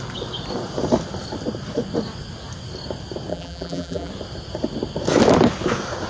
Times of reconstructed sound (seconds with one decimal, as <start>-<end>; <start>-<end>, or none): 3.3-4.1